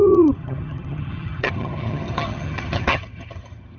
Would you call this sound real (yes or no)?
no